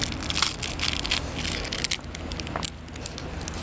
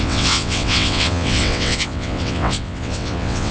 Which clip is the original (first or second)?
first